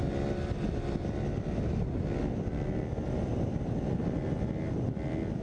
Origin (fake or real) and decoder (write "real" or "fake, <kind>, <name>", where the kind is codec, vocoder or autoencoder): real